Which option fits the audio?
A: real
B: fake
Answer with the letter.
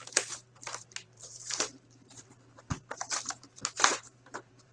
B